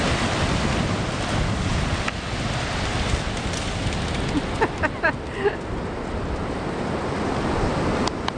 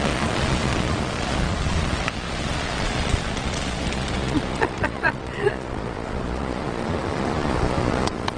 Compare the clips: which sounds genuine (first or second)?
first